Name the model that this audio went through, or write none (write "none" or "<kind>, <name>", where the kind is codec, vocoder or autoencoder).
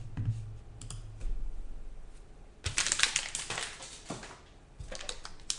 none